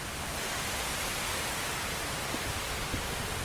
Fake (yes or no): no